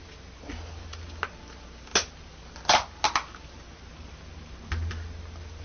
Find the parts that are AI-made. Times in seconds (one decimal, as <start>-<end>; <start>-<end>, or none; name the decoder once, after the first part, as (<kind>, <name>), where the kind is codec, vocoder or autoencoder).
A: none